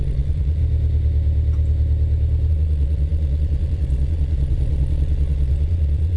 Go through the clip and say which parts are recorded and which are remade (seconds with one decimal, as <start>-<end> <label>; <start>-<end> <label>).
0.0-0.6 remade; 0.6-2.5 recorded; 2.5-6.2 remade